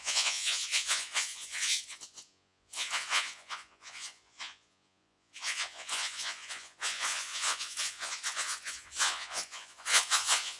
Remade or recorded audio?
remade